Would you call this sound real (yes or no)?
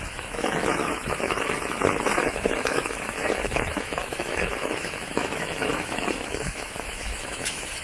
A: no